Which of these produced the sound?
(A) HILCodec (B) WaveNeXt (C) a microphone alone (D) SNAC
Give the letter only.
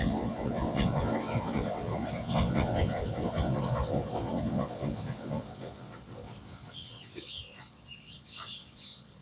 B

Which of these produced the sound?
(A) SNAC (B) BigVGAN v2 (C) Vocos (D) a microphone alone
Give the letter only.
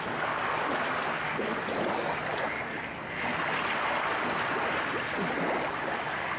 D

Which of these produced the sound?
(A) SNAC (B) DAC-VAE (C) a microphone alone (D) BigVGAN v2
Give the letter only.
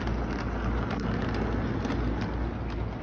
C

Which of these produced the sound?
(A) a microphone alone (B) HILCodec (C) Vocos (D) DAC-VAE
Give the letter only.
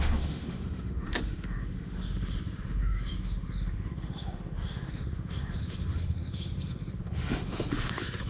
D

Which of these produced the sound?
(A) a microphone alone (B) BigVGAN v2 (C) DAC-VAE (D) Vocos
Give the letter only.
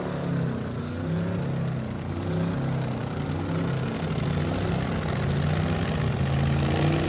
A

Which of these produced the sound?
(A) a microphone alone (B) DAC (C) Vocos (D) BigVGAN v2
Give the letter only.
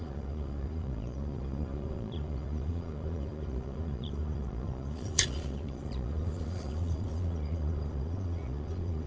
C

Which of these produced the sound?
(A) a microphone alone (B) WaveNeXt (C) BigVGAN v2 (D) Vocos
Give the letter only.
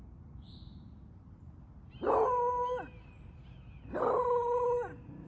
A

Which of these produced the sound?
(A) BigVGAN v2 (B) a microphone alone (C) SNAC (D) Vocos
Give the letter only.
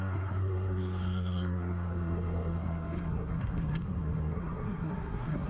C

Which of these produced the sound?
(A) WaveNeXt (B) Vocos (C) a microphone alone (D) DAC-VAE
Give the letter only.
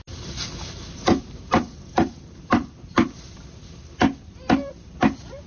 C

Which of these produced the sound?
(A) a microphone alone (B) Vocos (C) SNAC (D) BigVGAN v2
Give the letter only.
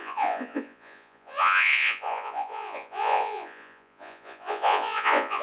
B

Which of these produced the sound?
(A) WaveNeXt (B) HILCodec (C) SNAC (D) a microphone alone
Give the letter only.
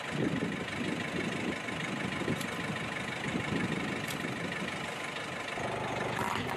D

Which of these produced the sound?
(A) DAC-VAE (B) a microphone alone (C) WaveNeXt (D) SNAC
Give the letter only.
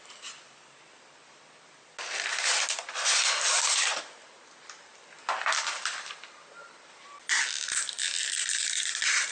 B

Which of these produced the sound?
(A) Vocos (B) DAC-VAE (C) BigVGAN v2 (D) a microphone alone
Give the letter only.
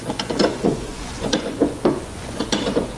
A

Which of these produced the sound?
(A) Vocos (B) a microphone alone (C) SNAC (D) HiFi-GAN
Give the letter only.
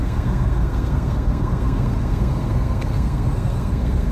C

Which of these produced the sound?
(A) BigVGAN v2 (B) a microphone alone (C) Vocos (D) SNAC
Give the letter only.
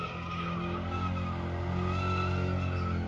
B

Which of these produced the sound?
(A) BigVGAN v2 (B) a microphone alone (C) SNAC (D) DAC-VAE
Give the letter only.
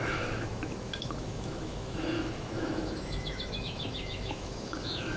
D